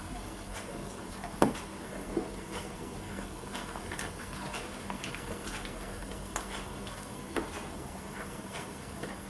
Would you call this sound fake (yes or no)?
yes